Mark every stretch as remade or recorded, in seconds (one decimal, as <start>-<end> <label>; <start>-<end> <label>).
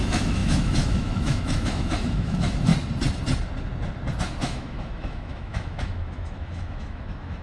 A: 0.0-2.7 remade; 2.7-4.4 recorded; 4.4-7.4 remade